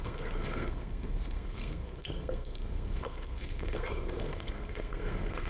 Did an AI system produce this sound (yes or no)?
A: yes